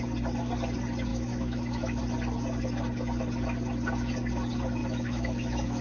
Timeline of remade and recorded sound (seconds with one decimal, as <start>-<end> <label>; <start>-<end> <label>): 0.0-1.1 recorded; 1.1-2.0 remade; 2.0-4.8 recorded; 4.8-5.8 remade